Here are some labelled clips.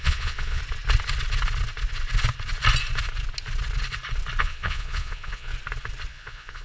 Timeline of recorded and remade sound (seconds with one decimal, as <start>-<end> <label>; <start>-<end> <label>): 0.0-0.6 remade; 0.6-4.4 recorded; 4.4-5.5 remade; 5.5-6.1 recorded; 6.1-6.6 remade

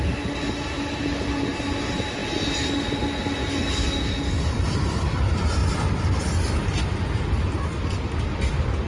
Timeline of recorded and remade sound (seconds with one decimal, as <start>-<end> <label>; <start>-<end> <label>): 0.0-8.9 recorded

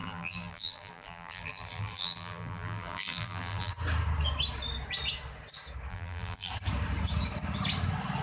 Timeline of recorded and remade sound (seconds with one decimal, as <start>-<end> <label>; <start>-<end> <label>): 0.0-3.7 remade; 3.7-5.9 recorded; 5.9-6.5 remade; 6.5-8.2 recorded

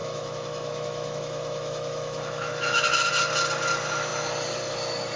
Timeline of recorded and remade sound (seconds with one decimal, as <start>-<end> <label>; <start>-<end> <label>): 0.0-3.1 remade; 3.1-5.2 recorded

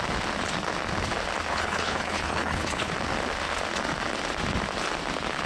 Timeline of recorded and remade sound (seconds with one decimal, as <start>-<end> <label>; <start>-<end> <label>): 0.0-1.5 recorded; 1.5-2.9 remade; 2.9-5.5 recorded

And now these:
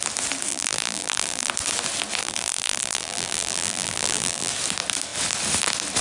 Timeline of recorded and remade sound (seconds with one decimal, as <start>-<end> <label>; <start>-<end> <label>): 0.0-0.5 recorded; 0.5-1.5 remade; 1.5-2.2 recorded; 2.2-4.5 remade; 4.5-6.0 recorded